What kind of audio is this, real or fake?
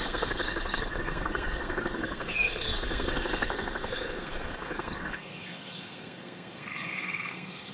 fake